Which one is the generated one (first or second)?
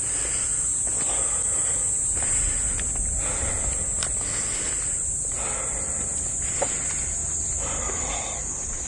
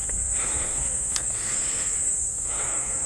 second